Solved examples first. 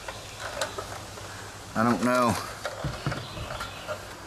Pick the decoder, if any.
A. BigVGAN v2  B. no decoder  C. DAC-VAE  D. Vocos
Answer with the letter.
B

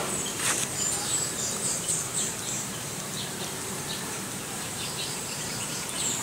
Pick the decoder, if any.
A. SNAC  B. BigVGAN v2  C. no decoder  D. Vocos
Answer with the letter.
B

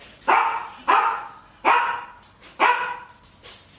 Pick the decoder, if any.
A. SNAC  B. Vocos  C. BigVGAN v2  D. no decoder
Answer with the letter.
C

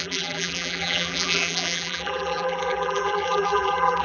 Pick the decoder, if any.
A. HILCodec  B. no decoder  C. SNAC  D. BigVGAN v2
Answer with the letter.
D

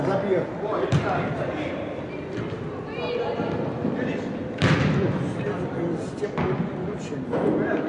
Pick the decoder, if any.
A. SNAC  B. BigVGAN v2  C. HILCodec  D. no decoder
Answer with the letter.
D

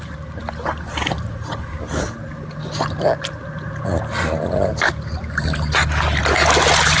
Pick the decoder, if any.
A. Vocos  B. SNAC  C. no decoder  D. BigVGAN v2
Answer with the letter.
C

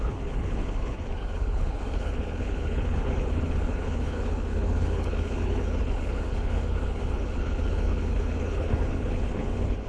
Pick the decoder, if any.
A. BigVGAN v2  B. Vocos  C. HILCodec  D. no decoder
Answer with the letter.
C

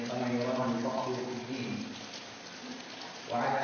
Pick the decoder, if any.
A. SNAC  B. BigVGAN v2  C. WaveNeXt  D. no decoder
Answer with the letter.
D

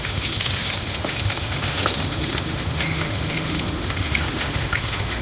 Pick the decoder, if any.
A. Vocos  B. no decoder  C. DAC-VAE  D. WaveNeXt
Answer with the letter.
C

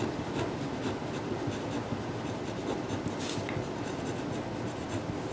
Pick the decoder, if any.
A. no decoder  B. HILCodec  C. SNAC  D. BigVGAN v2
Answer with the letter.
A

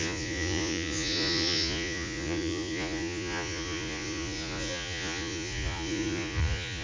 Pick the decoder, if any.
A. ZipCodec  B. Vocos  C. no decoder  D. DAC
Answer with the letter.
B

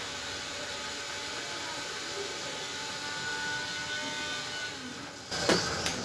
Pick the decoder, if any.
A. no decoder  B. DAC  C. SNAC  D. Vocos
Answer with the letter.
A